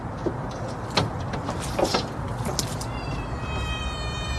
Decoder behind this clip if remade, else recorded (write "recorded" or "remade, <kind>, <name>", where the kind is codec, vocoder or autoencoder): recorded